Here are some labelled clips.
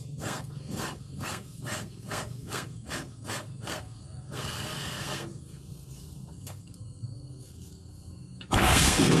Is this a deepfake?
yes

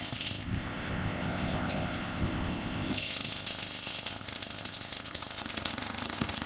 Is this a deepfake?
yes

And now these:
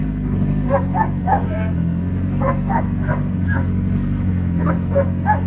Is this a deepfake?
yes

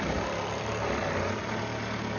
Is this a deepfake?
no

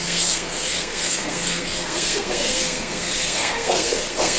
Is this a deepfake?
yes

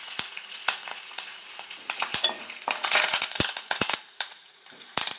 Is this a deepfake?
yes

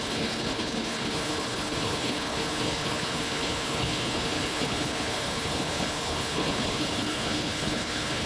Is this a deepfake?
yes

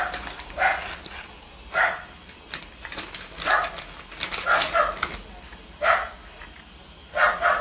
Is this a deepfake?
no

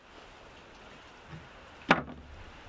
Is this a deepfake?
no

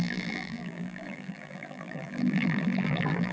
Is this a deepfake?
yes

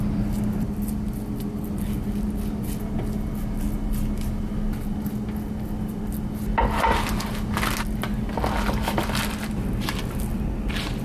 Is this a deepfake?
no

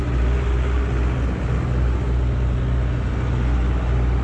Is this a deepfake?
no